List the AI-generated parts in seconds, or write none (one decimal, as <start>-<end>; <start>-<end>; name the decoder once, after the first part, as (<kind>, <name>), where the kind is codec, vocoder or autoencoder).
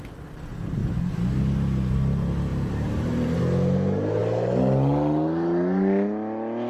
2.5-3.4 (vocoder, BigVGAN v2)